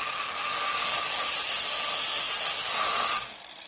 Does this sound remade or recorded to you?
recorded